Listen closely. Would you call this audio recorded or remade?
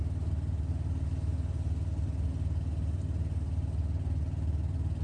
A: recorded